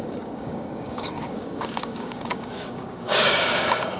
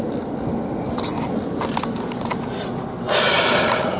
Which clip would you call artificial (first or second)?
first